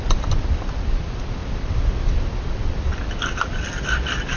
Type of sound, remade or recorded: remade